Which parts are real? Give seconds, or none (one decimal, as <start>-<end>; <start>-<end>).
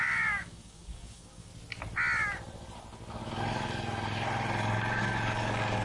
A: 1.5-5.0